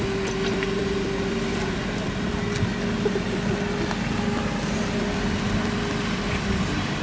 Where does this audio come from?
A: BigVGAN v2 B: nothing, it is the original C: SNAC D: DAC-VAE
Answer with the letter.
B